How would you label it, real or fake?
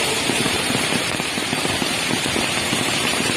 fake